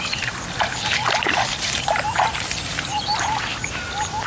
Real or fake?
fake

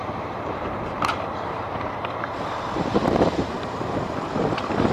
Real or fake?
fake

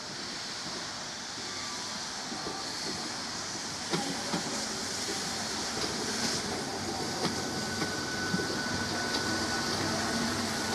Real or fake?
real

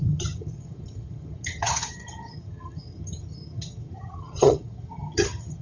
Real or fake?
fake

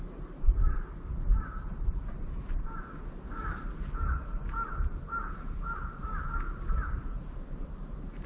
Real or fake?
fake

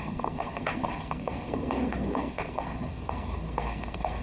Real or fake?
fake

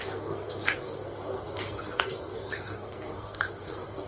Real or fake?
fake